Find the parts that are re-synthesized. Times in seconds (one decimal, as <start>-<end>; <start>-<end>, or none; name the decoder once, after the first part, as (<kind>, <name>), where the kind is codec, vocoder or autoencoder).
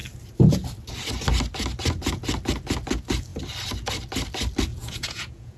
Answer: 4.7-5.6 (vocoder, Vocos)